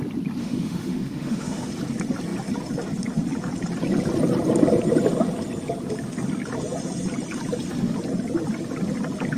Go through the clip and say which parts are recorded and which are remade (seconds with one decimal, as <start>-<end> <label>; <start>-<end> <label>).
0.0-0.4 recorded; 0.4-1.7 remade; 1.7-9.4 recorded